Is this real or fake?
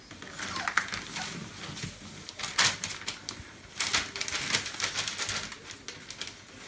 real